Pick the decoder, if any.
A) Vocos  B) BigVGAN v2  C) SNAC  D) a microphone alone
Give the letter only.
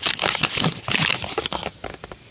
D